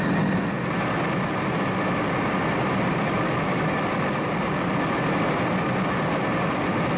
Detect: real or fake real